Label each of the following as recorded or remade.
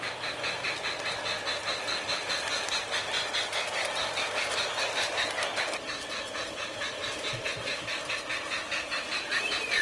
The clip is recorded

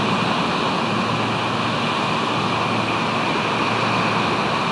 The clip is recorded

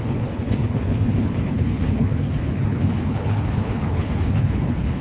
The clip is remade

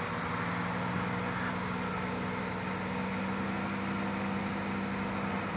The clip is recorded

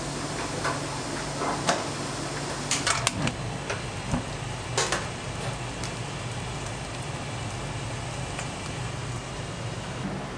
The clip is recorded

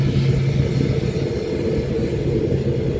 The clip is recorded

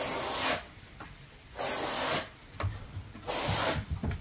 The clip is recorded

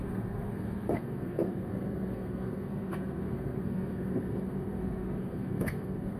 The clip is remade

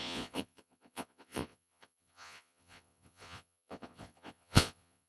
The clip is remade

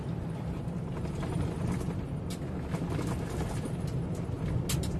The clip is recorded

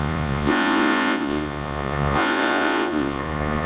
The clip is remade